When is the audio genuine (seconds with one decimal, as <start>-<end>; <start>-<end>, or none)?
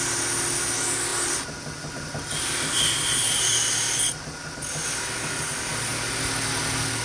0.0-7.0